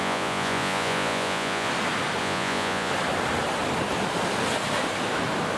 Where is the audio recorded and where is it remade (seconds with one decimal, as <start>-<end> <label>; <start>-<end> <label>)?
0.0-1.7 remade; 1.7-2.2 recorded; 2.2-2.9 remade; 2.9-5.6 recorded